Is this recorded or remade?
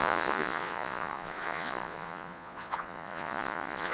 remade